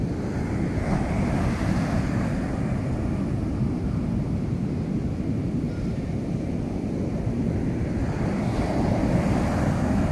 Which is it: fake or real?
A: real